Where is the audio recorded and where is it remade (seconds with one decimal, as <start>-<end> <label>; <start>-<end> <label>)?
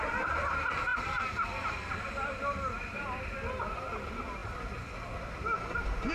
0.0-6.1 recorded